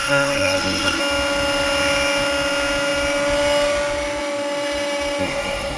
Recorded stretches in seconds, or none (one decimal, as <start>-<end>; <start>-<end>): 1.0-5.2